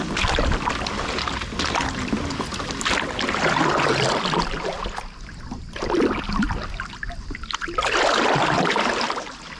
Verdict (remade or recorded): recorded